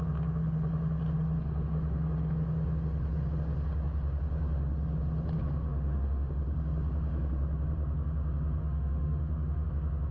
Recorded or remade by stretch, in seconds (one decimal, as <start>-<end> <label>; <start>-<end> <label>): 0.0-5.7 recorded; 5.7-6.3 remade; 6.3-8.6 recorded; 8.6-9.7 remade; 9.7-10.1 recorded